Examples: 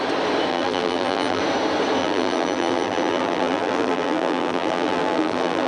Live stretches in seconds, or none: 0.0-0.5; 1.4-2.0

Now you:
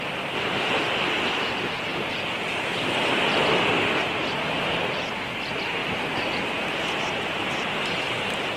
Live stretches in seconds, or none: 0.0-8.6

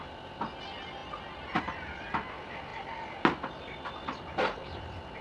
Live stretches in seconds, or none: 0.0-5.2

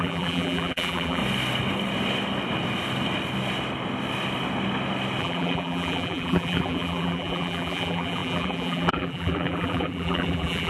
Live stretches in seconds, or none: 1.2-5.2

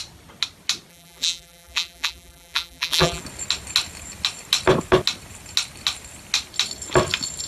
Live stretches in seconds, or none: 0.0-0.9; 3.2-7.5

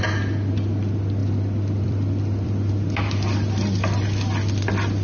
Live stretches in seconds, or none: 0.0-1.2; 2.7-5.0

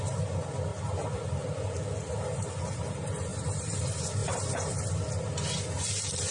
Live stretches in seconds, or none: 0.0-0.7; 2.1-3.3; 3.8-4.2; 4.9-6.3